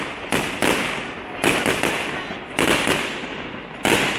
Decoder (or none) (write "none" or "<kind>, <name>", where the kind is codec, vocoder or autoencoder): none